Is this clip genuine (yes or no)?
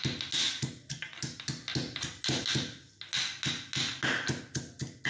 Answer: yes